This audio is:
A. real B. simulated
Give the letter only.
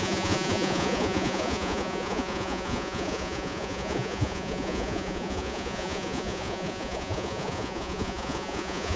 B